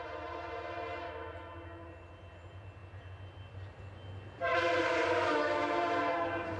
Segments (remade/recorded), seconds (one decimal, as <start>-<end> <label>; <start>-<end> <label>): 0.0-6.6 recorded

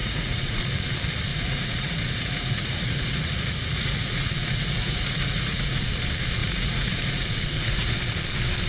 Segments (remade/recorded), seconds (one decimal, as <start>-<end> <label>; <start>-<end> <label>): 0.0-0.6 remade; 0.6-1.3 recorded; 1.3-6.0 remade; 6.0-6.4 recorded; 6.4-8.0 remade; 8.0-8.7 recorded